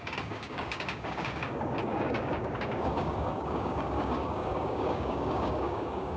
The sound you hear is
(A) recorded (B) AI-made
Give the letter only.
B